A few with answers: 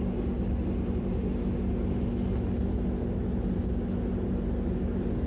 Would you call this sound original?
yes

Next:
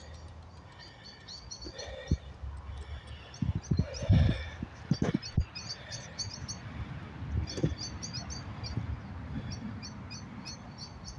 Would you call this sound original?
yes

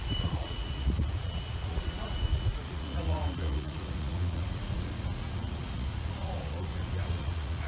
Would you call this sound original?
no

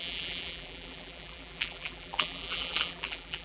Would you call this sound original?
no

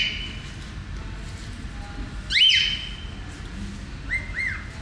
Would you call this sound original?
yes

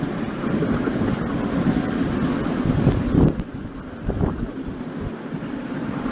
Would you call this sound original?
yes